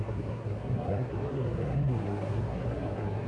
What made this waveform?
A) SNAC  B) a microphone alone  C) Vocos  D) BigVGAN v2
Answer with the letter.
A